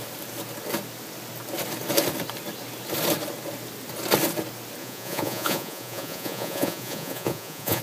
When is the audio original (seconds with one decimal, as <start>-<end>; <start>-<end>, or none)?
0.0-4.8